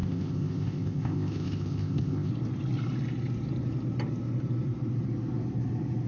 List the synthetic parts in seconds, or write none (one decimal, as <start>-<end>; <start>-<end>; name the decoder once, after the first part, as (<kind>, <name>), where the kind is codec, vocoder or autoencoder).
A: 0.0-2.3 (codec, ZipCodec)